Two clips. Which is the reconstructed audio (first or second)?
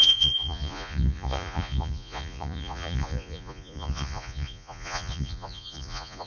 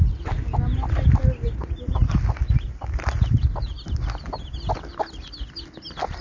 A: first